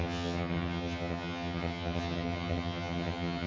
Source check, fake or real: fake